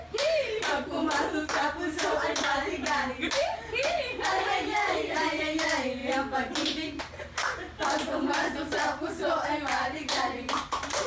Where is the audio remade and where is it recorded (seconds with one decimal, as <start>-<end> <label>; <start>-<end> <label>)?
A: 0.0-6.0 remade; 6.0-7.0 recorded; 7.0-11.1 remade